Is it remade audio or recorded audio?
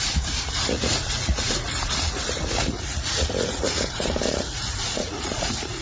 remade